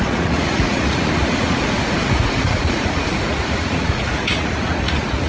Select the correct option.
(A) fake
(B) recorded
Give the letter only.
A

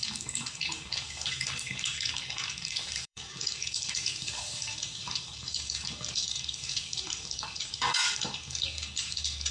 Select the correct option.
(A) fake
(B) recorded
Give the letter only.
A